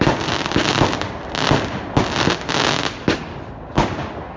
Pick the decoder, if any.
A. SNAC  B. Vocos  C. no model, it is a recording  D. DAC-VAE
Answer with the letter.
C